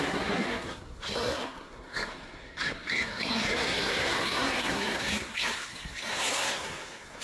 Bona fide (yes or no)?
no